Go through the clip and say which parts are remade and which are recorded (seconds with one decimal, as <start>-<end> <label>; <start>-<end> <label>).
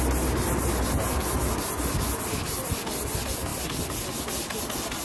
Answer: 0.0-5.0 recorded